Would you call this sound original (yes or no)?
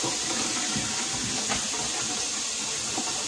yes